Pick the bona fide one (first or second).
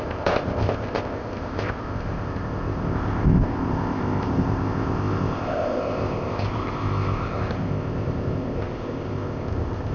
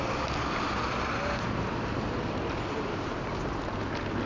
second